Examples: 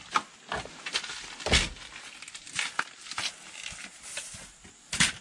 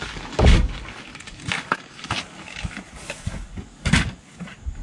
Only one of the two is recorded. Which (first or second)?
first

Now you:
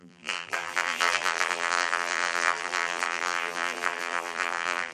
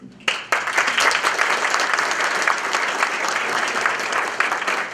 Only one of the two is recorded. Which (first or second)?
second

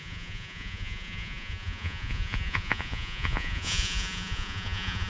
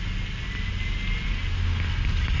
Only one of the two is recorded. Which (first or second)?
second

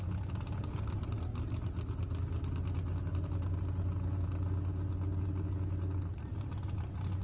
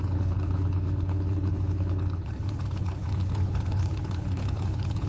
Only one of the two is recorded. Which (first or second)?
first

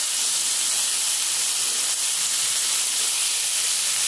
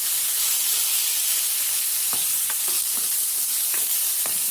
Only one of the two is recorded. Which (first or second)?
first